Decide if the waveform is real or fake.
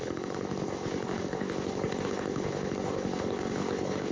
fake